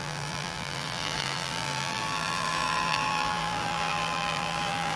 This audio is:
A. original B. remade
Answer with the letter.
B